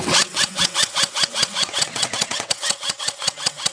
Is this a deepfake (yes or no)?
yes